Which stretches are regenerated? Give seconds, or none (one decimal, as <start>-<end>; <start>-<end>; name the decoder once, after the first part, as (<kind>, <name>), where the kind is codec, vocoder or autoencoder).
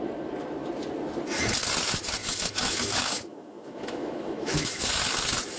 2.2-4.9 (autoencoder, DAC-VAE)